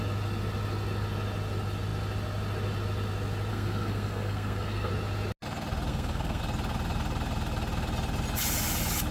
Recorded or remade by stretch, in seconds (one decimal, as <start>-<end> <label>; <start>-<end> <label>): 0.0-3.5 recorded; 3.5-4.9 remade; 4.9-5.9 recorded; 5.9-6.4 remade; 6.4-9.1 recorded